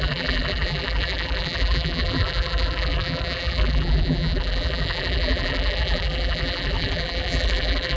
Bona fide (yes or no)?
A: no